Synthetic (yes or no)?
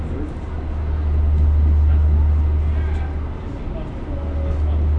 no